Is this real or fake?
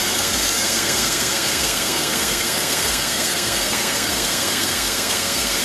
fake